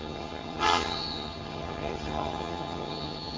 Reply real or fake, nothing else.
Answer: fake